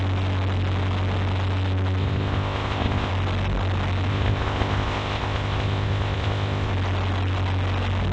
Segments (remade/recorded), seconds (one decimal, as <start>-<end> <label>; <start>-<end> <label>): 0.0-2.0 recorded; 2.0-3.1 remade; 3.1-4.1 recorded; 4.1-6.7 remade; 6.7-8.1 recorded